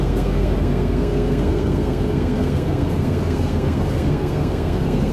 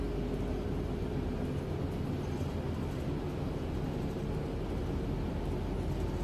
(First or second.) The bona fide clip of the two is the second